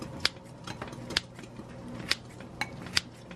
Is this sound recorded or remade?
recorded